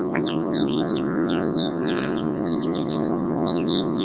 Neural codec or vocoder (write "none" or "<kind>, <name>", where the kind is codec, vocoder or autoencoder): vocoder, Vocos